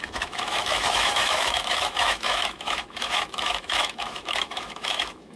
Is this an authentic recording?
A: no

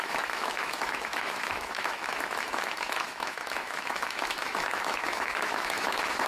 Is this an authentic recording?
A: no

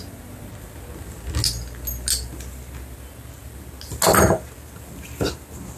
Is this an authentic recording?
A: yes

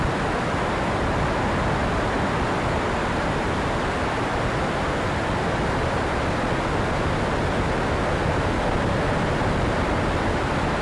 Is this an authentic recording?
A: yes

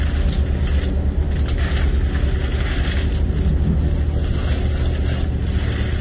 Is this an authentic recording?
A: yes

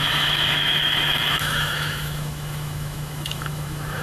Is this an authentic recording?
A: no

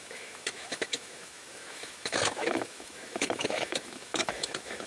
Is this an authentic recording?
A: no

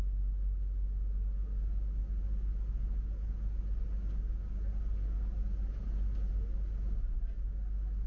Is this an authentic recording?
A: yes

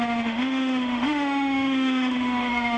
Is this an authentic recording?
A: no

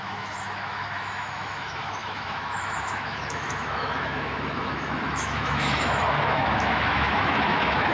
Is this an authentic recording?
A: no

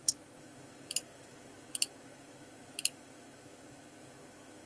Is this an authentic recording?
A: no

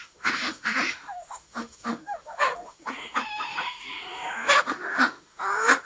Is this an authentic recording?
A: no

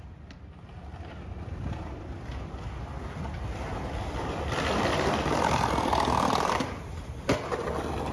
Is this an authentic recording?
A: yes